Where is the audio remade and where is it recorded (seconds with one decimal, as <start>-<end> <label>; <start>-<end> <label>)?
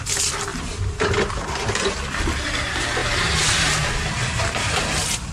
0.0-0.5 recorded; 0.5-1.5 remade; 1.5-4.2 recorded; 4.2-4.8 remade; 4.8-5.3 recorded